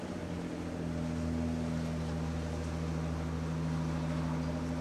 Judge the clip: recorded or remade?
recorded